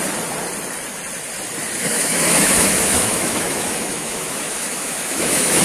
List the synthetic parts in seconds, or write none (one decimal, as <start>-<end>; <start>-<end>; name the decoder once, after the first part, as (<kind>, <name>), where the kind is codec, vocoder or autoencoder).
1.8-5.6 (autoencoder, DAC-VAE)